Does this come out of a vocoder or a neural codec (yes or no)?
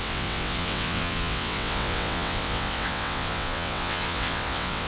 yes